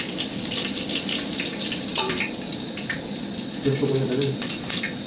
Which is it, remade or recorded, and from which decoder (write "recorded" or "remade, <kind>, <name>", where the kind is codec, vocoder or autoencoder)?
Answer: recorded